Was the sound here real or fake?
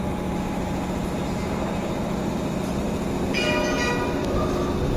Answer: real